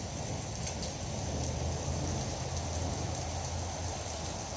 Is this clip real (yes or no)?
yes